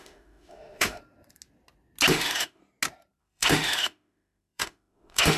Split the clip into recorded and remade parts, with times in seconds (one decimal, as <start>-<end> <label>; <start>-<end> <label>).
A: 0.0-1.0 remade; 1.0-2.1 recorded; 2.1-2.6 remade; 2.6-3.2 recorded; 3.2-5.4 remade